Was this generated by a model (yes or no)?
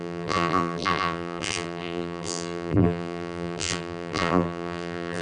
yes